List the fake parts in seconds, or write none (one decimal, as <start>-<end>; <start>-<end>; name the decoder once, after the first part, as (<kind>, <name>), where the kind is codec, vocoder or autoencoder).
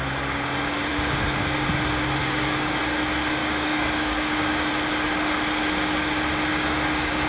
0.9-1.7 (codec, DAC); 2.2-2.8; 3.4-4.7; 6.5-7.3